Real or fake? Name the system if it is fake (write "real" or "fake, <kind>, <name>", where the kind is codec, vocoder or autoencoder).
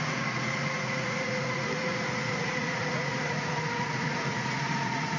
fake, vocoder, Vocos